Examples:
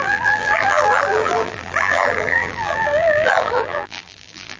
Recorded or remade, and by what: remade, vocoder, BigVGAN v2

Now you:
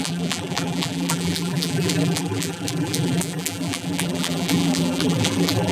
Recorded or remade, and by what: remade, vocoder, BigVGAN v2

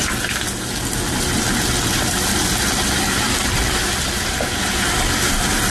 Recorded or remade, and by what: recorded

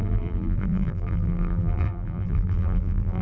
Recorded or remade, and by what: remade, vocoder, BigVGAN v2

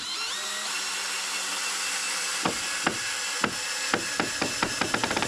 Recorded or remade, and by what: remade, vocoder, BigVGAN v2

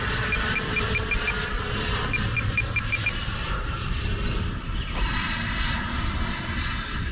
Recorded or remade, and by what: remade, vocoder, BigVGAN v2